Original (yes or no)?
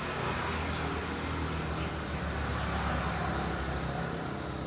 yes